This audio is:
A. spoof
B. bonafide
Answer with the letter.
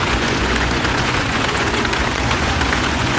A